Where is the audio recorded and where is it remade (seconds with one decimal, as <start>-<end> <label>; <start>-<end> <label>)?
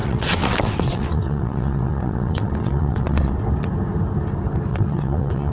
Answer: 0.0-3.3 remade; 3.3-4.7 recorded; 4.7-5.5 remade